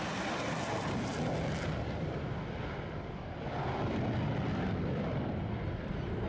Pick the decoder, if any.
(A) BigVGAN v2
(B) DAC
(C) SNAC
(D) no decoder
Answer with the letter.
A